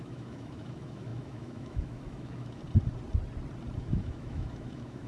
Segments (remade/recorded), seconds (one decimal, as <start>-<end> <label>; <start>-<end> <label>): 0.0-2.6 remade; 2.6-3.8 recorded; 3.8-5.1 remade